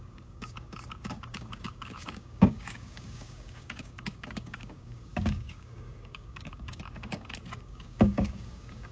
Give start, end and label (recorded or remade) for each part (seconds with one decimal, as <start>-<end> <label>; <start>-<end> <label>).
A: 0.0-8.9 remade